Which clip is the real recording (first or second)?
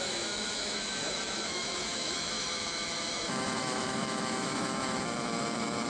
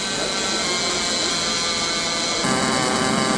second